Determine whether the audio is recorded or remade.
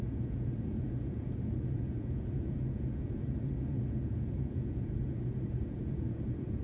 remade